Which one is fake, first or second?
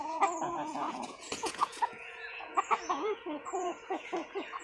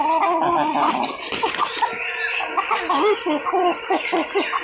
first